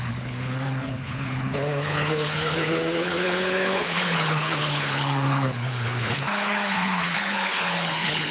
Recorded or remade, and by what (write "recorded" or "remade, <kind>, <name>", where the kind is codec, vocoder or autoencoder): remade, codec, HILCodec